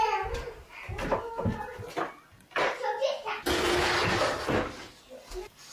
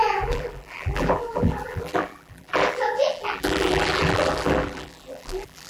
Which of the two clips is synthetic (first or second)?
second